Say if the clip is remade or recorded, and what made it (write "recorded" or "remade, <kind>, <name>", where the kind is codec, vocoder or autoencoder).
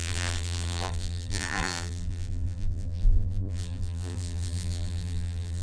remade, vocoder, BigVGAN v2